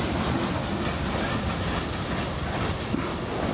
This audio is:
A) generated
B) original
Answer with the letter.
B